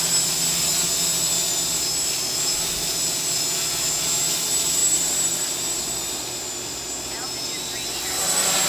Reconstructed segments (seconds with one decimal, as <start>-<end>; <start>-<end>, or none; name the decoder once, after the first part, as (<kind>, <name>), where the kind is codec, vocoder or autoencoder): none